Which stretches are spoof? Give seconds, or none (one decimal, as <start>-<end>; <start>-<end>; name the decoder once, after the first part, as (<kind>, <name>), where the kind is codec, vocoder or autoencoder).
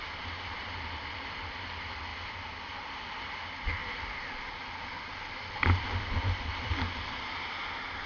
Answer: 3.8-6.7 (vocoder, BigVGAN v2)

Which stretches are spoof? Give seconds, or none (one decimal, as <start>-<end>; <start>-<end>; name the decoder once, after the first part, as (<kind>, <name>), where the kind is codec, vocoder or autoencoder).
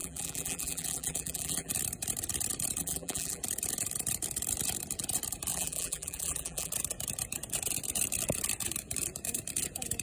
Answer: 0.0-1.7 (vocoder, BigVGAN v2); 2.8-3.4; 5.5-6.7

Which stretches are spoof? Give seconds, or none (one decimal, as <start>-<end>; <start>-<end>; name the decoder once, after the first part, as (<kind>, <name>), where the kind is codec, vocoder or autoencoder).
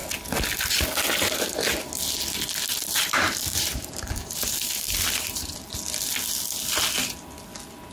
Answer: 3.5-5.8 (vocoder, BigVGAN v2)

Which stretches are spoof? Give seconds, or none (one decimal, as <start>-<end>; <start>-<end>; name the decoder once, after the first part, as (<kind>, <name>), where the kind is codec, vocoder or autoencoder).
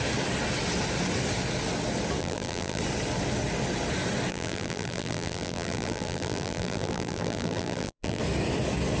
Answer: 2.2-2.8 (vocoder, BigVGAN v2); 4.3-8.2